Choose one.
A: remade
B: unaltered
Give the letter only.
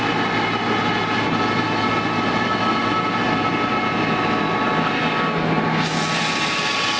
B